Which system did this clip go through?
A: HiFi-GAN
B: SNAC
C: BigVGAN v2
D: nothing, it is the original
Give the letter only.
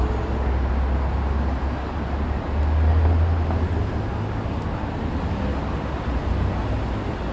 D